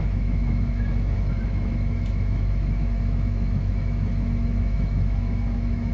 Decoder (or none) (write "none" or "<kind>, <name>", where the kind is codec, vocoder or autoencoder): autoencoder, DAC-VAE